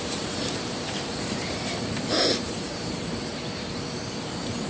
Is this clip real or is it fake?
fake